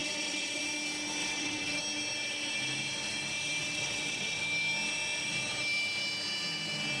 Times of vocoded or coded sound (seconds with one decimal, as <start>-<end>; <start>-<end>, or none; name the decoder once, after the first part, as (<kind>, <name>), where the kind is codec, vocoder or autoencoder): 0.0-0.6 (vocoder, WaveNeXt); 1.2-1.8; 3.6-4.4